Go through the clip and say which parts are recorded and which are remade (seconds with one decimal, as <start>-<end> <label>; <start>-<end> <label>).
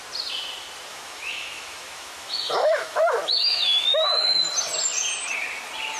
0.0-0.9 recorded; 0.9-4.4 remade; 4.4-6.0 recorded